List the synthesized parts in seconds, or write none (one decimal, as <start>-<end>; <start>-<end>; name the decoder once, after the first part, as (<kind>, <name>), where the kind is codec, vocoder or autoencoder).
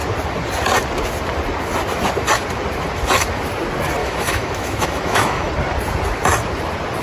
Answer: 4.0-5.5 (autoencoder, DAC-VAE)